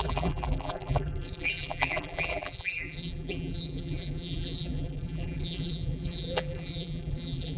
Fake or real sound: fake